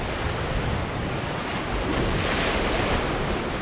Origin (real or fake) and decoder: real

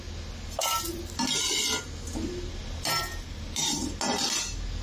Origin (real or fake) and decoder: real